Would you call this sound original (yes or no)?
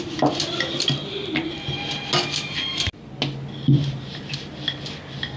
yes